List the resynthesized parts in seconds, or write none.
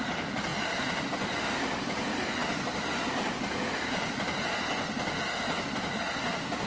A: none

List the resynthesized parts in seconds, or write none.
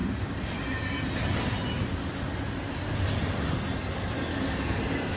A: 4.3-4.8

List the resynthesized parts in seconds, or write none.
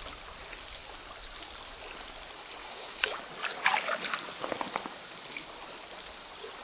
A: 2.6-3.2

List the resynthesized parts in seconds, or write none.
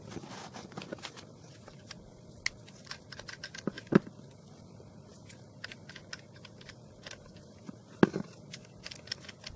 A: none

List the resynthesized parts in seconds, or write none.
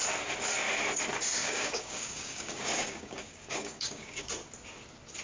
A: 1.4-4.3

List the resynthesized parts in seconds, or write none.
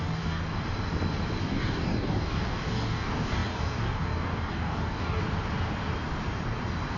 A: 0.0-0.4; 1.4-5.2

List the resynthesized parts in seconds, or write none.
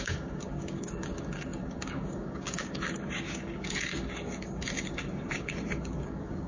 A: 0.0-6.5